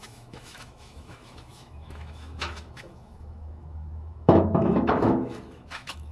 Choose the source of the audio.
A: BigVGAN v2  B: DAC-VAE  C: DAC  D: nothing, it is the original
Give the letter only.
B